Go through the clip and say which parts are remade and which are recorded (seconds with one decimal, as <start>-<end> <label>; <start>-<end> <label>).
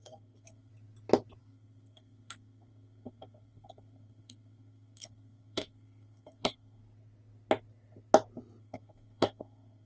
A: 0.0-0.7 remade; 0.7-1.4 recorded; 1.4-6.8 remade; 6.8-8.6 recorded; 8.6-9.9 remade